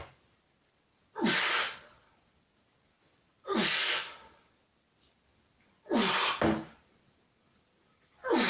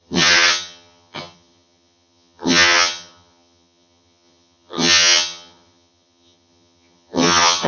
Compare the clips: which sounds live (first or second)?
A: first